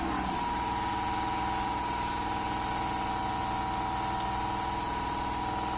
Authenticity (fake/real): real